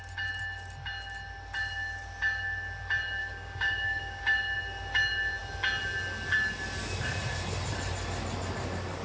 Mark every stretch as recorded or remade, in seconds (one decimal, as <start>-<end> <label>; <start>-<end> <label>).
0.0-3.2 recorded; 3.2-4.2 remade; 4.2-9.0 recorded